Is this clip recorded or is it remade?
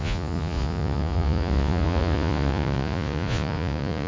remade